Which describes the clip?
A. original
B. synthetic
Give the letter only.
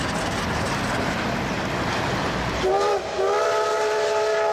A